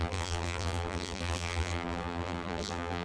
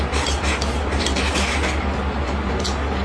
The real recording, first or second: second